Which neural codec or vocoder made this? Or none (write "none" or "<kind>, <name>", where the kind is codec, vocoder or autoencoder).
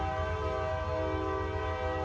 none